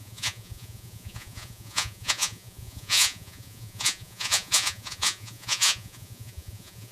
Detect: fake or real fake